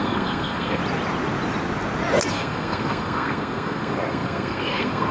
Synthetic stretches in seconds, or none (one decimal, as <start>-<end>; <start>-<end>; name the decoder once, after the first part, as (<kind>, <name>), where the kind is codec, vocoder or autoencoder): 0.0-0.8 (codec, SNAC); 2.3-5.1